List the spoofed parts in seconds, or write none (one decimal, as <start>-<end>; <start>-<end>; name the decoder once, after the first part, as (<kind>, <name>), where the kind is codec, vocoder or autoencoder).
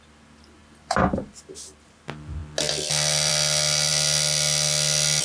none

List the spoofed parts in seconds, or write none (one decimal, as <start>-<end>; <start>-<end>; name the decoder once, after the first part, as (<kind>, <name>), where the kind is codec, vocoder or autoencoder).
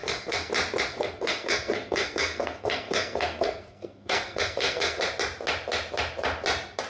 0.0-0.5 (codec, SNAC); 0.9-5.0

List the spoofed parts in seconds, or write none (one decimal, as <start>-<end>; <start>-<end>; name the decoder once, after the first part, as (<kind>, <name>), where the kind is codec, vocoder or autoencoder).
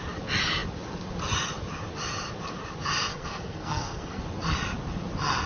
3.1-4.2 (codec, SNAC)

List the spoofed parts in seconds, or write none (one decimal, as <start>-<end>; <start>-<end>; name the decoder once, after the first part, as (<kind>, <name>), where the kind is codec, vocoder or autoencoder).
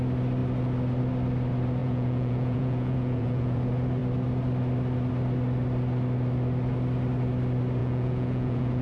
1.8-3.6 (vocoder, Vocos); 7.8-8.8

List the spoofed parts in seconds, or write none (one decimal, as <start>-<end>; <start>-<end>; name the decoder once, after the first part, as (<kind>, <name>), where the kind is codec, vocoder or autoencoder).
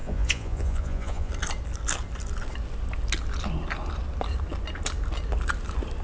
0.0-1.3 (vocoder, Vocos)